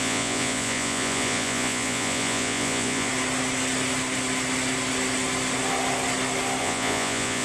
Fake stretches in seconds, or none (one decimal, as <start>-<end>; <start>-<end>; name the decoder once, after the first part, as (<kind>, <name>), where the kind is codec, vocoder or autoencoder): 0.0-3.1 (vocoder, Vocos); 6.6-7.4